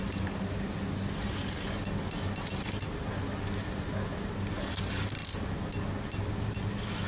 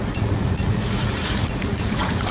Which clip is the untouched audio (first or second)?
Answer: first